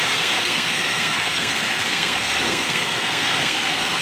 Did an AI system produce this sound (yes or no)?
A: yes